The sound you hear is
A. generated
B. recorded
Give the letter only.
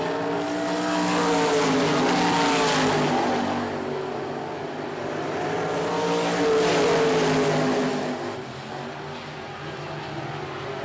B